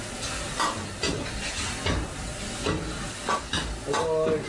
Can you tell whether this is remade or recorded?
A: recorded